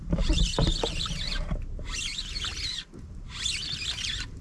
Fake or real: real